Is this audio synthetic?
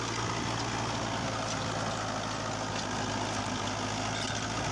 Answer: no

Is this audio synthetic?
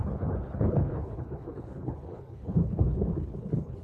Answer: yes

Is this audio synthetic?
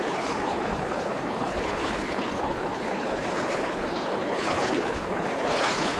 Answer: yes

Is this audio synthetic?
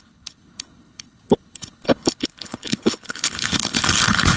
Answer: yes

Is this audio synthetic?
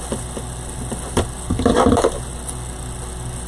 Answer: no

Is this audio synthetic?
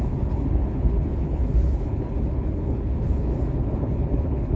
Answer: yes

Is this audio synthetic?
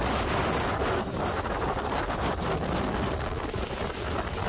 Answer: no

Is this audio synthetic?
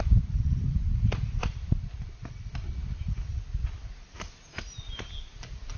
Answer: no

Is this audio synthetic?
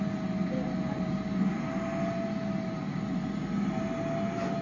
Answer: no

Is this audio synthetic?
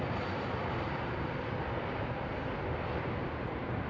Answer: no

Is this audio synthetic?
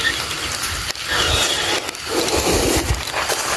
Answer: no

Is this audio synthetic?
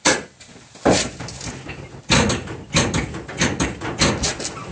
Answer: no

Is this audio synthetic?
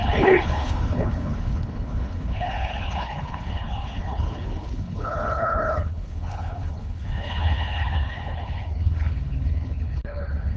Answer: yes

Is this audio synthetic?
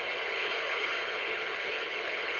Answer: yes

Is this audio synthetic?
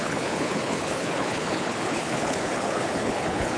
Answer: yes